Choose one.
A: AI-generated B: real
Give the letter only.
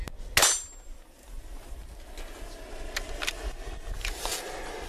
B